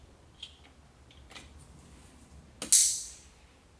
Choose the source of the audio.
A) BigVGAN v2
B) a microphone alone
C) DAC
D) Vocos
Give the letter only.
B